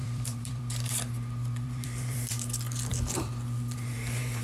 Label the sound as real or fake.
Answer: fake